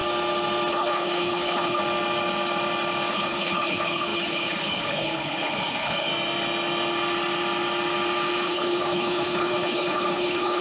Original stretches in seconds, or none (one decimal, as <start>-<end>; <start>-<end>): 0.0-0.7; 1.8-3.1; 6.1-8.4